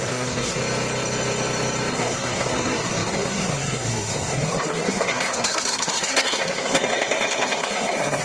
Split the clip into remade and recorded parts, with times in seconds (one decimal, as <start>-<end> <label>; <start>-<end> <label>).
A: 0.0-0.6 remade; 0.6-1.9 recorded; 1.9-8.2 remade

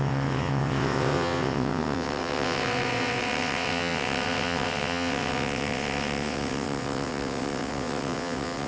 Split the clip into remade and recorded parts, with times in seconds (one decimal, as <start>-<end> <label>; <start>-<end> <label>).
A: 0.0-8.7 remade